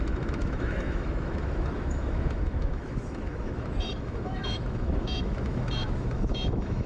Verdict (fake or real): fake